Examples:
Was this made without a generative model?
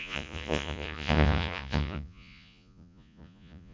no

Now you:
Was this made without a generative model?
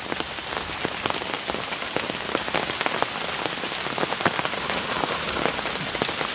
yes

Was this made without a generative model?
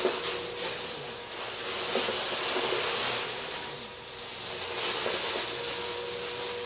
yes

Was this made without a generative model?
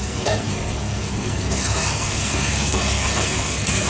no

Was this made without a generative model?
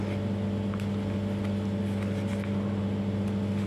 yes